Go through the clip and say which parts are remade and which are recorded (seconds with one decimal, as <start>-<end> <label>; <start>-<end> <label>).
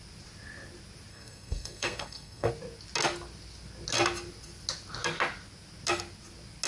0.0-1.1 recorded; 1.1-2.5 remade; 2.5-6.7 recorded